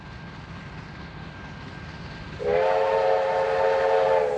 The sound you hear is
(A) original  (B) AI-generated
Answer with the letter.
A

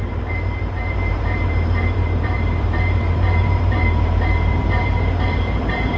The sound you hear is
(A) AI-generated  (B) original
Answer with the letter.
A